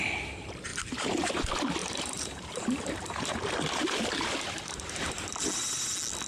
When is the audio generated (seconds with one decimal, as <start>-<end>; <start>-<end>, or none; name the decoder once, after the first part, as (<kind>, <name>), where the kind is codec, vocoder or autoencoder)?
0.7-1.3 (vocoder, BigVGAN v2); 1.8-5.5